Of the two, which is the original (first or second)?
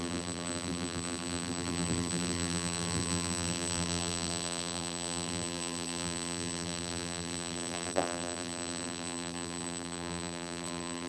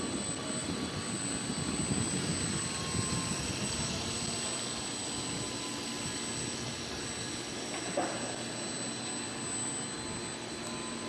second